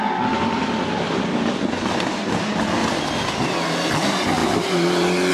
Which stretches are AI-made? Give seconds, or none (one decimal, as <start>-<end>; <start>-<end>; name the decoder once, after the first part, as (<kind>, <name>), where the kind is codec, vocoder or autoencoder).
none